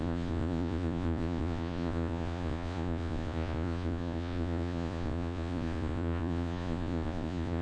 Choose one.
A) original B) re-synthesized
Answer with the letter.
B